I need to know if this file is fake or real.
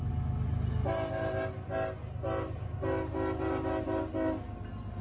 real